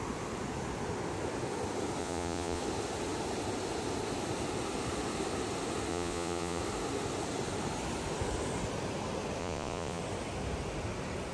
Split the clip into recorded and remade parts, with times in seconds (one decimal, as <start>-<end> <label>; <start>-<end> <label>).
0.0-2.0 recorded; 2.0-2.6 remade; 2.6-5.9 recorded; 5.9-6.6 remade; 6.6-9.4 recorded; 9.4-10.0 remade; 10.0-11.3 recorded